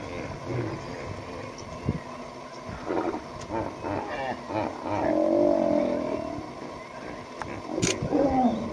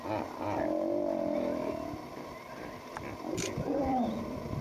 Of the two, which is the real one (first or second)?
first